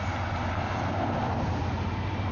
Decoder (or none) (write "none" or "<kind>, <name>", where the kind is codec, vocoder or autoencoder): none